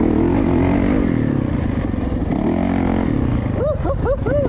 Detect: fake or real real